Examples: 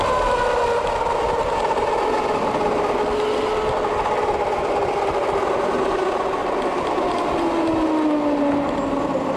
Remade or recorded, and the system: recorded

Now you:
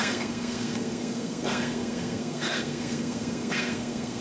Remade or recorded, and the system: remade, codec, SNAC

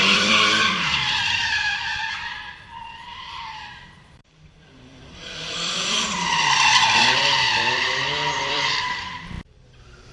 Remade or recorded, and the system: remade, vocoder, BigVGAN v2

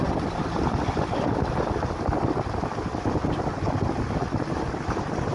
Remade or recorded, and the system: recorded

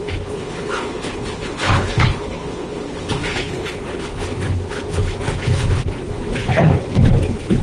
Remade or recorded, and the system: remade, codec, HILCodec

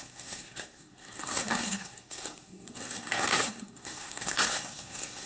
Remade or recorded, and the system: remade, codec, SNAC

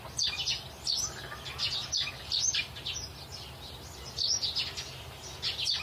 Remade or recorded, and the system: recorded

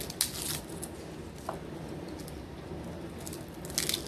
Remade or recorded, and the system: recorded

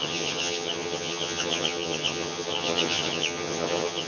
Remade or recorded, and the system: remade, vocoder, HiFi-GAN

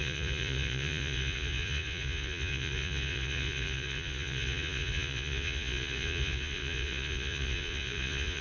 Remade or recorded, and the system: remade, vocoder, Vocos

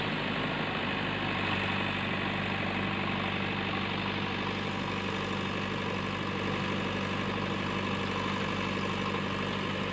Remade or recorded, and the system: recorded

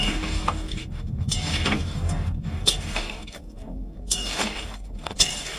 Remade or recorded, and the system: remade, codec, DAC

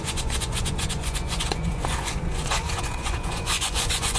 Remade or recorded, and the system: remade, vocoder, Vocos